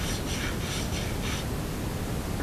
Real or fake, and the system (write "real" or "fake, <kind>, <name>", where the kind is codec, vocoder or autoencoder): real